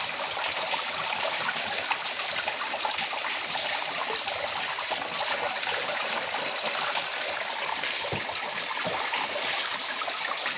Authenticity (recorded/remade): remade